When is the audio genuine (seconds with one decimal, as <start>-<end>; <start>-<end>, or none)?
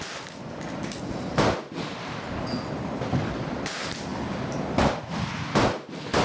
0.0-6.2